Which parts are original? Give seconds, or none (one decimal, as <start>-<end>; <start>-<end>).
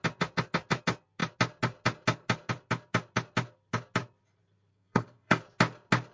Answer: 0.0-4.7; 5.4-6.1